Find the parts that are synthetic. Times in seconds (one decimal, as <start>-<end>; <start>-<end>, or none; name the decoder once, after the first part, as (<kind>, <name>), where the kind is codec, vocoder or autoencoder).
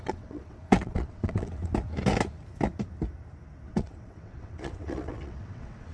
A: 0.0-1.7 (vocoder, WaveNeXt); 3.7-5.9